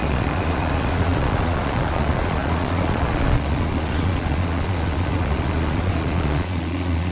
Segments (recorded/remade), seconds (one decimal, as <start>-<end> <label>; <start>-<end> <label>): 0.0-7.1 remade